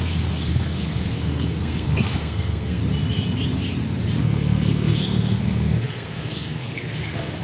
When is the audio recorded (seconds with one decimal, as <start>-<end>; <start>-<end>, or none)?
2.8-4.2